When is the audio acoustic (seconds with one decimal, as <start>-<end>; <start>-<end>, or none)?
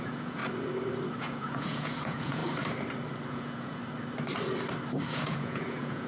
0.4-1.2; 2.4-3.3; 3.8-5.1